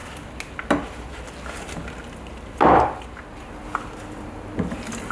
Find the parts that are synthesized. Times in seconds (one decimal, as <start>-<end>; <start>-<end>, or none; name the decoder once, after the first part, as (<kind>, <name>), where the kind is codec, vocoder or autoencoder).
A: none